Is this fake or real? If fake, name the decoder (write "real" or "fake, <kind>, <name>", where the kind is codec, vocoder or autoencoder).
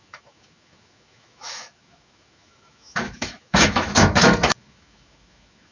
fake, autoencoder, DAC-VAE